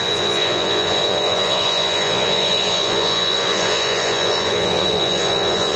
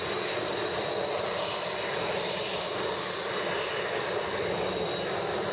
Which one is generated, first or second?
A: first